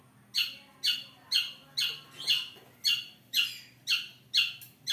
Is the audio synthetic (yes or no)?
no